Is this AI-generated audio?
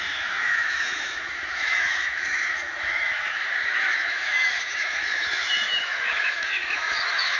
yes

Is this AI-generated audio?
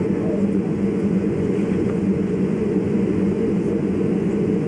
yes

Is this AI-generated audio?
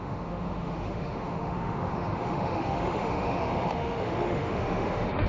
yes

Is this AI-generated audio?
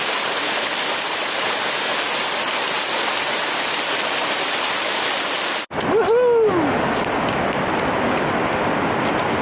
no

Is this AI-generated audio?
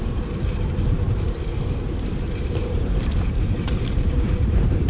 yes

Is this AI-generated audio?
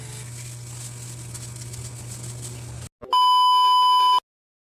no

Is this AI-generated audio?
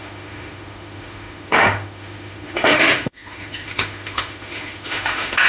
yes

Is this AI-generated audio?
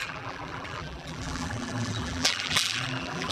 yes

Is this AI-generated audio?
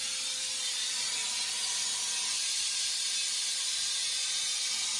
no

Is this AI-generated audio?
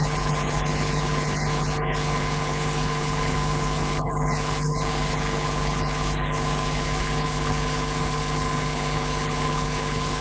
yes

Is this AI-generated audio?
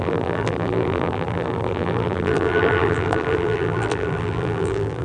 yes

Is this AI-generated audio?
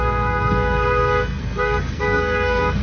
yes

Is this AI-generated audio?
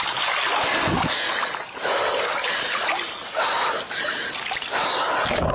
no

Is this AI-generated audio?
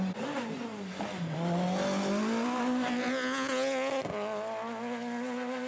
no